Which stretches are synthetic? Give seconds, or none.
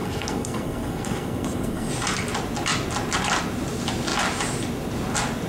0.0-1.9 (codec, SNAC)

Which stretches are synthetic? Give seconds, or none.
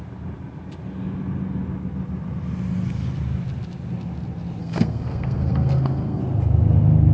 4.6-6.2 (codec, SNAC)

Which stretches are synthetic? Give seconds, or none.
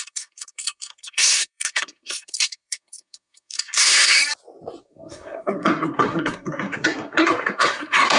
0.0-4.2 (codec, SNAC); 4.8-8.2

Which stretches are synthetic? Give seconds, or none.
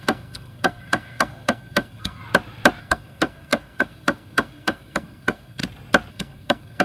0.0-2.2 (codec, SNAC); 2.8-5.6; 6.1-6.8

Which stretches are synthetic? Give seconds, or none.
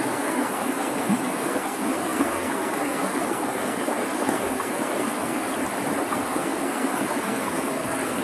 0.0-5.5 (codec, SNAC); 6.1-8.2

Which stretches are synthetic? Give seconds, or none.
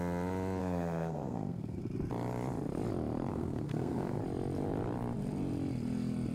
0.6-1.8 (codec, SNAC); 3.3-4.2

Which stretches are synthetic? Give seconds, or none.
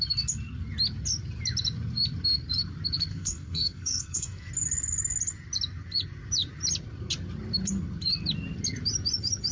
3.1-4.5 (codec, SNAC)